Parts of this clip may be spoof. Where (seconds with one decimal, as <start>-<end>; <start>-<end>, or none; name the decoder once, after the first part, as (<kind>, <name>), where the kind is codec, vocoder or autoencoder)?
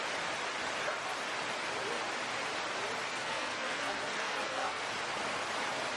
3.1-4.8 (codec, SNAC)